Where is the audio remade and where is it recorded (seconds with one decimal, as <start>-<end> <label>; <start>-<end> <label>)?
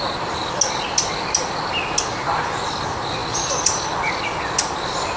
0.0-2.1 recorded; 2.1-2.7 remade; 2.7-5.2 recorded